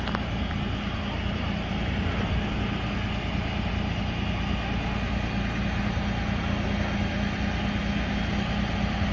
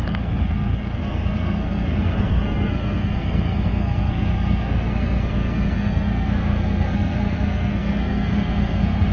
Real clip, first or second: first